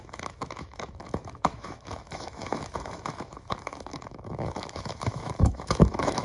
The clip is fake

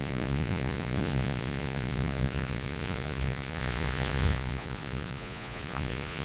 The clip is fake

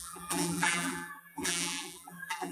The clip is fake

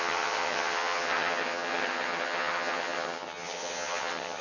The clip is fake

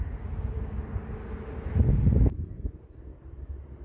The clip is real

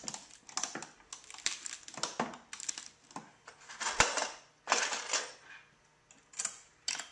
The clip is real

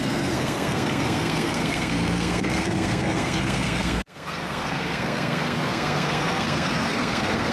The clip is fake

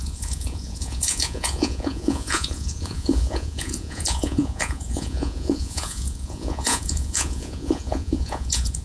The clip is fake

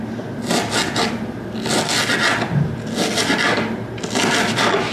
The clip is real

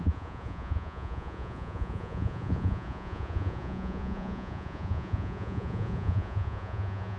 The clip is fake